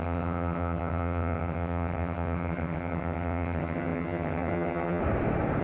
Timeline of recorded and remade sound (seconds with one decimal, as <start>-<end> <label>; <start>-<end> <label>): 0.0-5.0 remade; 5.0-5.6 recorded